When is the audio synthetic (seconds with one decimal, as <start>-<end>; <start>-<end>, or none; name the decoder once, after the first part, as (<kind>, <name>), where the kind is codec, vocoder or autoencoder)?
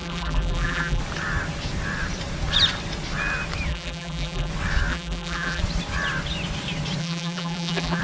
0.0-1.0 (vocoder, BigVGAN v2); 3.7-4.5; 4.9-5.6; 7.0-8.0